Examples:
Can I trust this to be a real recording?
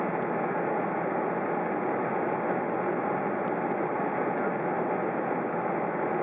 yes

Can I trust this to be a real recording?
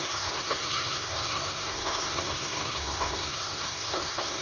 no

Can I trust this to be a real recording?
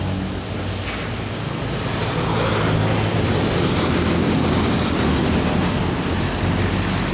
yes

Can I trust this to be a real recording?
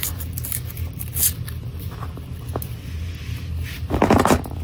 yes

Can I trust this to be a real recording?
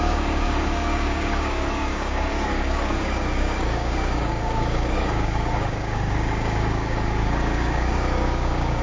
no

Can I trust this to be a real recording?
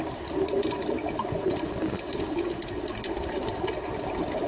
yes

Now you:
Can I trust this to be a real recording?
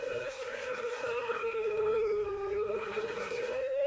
no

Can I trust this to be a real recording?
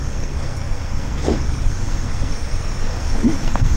no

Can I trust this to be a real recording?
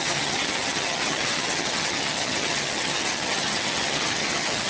no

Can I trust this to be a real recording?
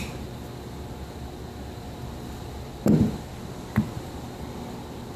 yes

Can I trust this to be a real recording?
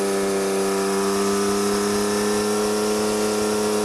yes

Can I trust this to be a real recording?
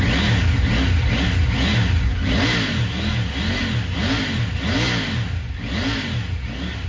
yes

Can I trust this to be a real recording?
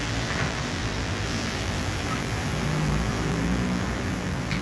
no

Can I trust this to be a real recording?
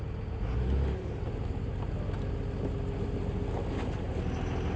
yes